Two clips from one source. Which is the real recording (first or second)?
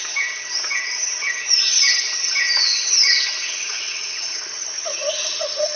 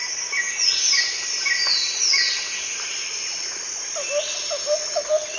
second